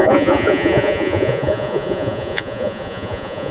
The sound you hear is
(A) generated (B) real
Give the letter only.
A